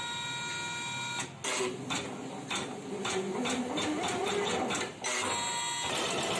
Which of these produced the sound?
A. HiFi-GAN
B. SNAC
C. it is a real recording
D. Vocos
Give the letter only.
C